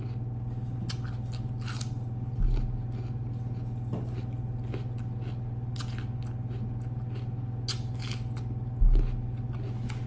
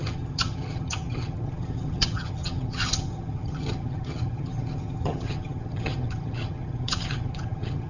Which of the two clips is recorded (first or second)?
first